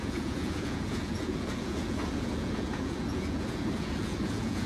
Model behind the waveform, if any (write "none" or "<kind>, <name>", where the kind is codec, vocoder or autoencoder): vocoder, Vocos